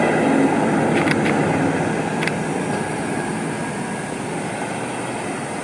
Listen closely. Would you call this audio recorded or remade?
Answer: recorded